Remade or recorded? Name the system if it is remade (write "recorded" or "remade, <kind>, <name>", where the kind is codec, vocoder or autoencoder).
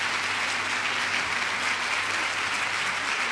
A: recorded